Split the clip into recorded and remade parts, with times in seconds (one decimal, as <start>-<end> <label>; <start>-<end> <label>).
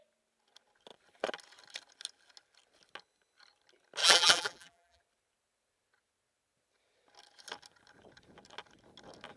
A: 0.0-4.0 recorded; 4.0-5.0 remade; 5.0-9.4 recorded